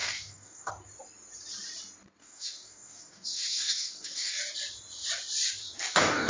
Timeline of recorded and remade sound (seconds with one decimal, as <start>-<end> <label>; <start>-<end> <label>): 0.0-0.7 remade; 0.7-2.2 recorded; 2.2-4.4 remade; 4.4-5.6 recorded; 5.6-6.3 remade